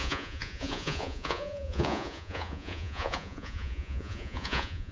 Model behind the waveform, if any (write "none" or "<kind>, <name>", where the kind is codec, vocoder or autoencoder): vocoder, Vocos